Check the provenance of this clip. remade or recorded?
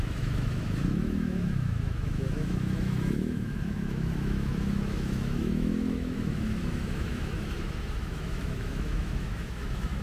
remade